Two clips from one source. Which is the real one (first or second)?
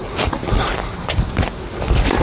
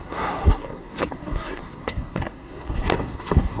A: first